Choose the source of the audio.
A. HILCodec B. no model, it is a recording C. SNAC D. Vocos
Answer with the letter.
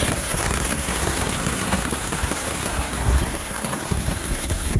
C